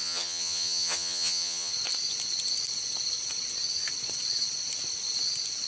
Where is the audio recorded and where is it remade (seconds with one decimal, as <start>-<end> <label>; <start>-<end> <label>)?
0.0-1.7 remade; 1.7-5.7 recorded